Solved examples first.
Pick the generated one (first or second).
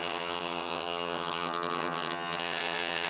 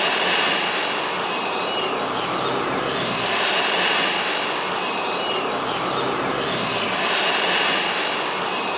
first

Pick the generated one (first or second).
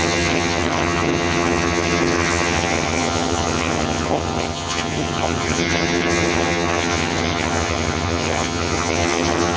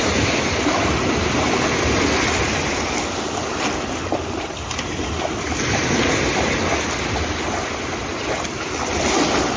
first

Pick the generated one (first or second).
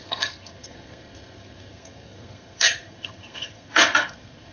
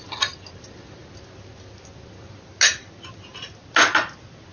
first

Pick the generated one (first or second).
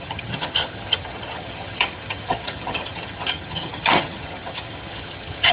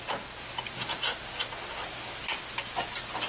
first